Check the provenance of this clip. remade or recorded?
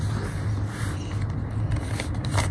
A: recorded